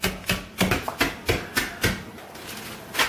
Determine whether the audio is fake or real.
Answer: real